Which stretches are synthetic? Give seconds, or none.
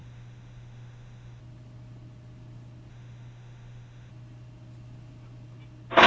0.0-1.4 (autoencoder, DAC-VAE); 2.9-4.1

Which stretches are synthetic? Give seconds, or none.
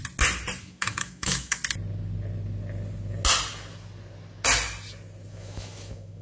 0.6-1.6 (autoencoder, DAC-VAE); 5.3-6.2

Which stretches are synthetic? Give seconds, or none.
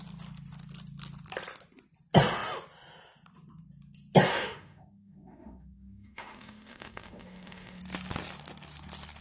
4.3-7.8 (autoencoder, DAC-VAE)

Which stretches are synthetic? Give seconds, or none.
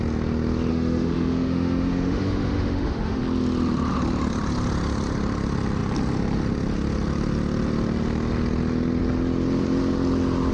0.7-3.2 (autoencoder, DAC-VAE)